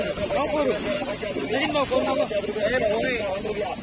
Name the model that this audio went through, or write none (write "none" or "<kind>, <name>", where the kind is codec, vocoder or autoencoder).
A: none